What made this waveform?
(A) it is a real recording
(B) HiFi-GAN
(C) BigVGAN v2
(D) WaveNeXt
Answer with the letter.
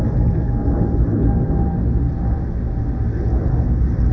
A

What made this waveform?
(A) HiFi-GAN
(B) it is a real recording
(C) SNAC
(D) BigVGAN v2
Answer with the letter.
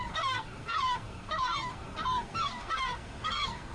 C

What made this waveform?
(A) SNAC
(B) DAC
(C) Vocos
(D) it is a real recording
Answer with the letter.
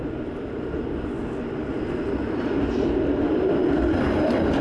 D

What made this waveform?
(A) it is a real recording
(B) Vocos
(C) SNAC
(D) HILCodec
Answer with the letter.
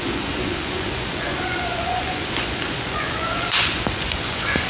B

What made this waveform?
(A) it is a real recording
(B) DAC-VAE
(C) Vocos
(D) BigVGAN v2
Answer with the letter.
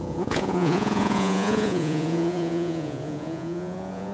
C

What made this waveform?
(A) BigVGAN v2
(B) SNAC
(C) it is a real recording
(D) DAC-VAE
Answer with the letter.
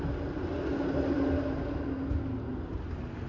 C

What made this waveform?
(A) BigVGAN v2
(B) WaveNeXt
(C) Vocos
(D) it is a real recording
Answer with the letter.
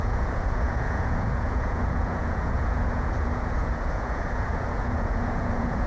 C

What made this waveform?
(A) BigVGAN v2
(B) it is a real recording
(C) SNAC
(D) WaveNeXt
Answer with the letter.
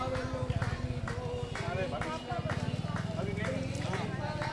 B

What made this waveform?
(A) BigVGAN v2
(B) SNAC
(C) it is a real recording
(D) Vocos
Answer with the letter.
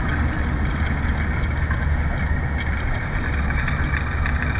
C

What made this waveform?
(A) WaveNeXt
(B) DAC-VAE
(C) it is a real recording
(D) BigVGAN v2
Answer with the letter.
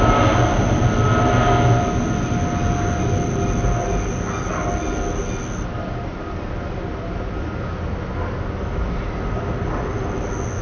C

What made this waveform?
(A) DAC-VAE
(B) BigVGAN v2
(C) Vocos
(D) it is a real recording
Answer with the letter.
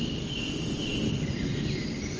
D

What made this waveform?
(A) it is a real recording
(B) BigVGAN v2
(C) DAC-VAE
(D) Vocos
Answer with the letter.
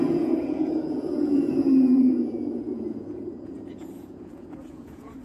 D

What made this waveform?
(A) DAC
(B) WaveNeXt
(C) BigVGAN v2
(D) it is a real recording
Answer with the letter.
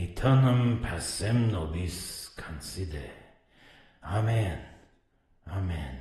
D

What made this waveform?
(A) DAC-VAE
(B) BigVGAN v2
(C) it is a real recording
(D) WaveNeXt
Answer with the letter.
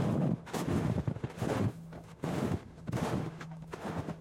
A